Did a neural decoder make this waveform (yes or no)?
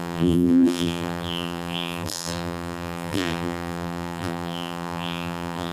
yes